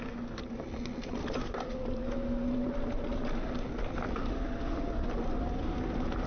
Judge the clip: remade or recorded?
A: recorded